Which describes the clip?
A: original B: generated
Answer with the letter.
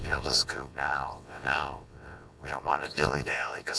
B